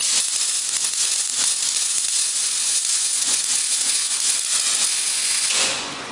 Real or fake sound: fake